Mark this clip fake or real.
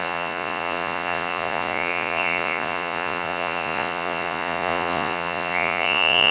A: fake